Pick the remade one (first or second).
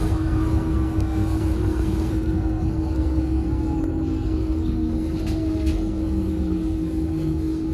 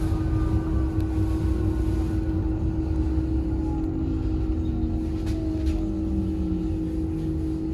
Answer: first